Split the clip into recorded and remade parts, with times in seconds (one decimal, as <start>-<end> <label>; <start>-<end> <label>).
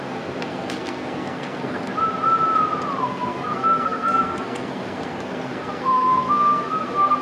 0.0-1.9 remade; 1.9-3.0 recorded; 3.0-7.2 remade